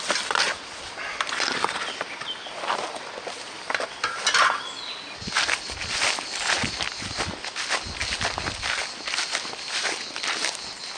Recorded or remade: recorded